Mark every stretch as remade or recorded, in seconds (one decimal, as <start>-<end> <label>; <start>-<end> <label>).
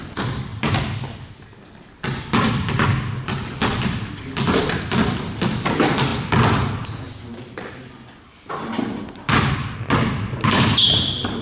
0.0-11.4 recorded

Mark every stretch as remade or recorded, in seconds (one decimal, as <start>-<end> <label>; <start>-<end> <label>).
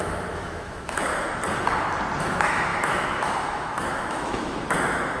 0.0-1.1 remade; 1.1-2.2 recorded; 2.2-5.2 remade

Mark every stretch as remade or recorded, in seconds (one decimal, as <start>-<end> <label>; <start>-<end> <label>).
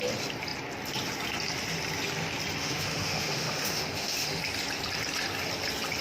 0.0-2.6 recorded; 2.6-4.4 remade; 4.4-6.0 recorded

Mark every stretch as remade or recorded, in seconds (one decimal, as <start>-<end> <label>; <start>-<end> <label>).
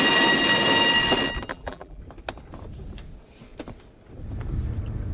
0.0-1.5 recorded; 1.5-2.0 remade; 2.0-5.1 recorded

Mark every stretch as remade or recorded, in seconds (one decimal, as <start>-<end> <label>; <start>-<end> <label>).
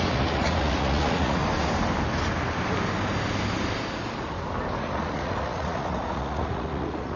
0.0-1.4 remade; 1.4-4.8 recorded; 4.8-7.2 remade